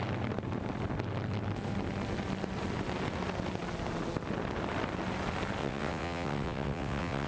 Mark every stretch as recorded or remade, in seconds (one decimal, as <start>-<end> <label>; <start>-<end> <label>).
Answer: 0.0-5.6 recorded; 5.6-7.3 remade